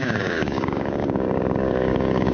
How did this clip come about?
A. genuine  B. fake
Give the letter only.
B